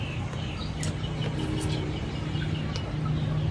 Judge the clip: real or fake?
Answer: real